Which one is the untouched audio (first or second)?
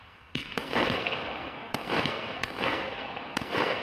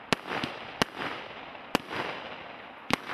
second